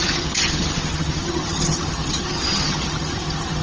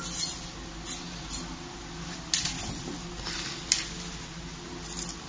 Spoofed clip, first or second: first